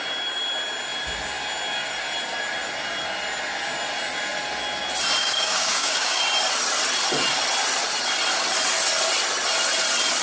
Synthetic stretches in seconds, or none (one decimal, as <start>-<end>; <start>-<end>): 5.2-6.2